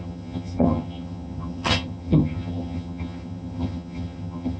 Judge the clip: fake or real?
fake